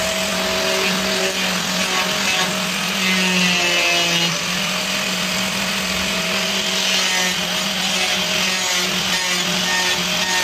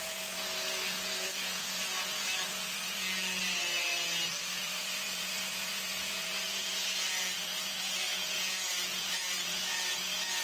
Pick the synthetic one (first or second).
second